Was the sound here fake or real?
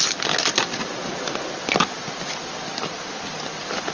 real